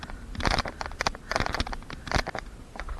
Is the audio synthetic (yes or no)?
no